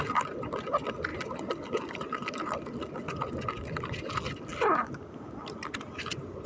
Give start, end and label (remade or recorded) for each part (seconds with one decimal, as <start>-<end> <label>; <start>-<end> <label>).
0.0-6.5 recorded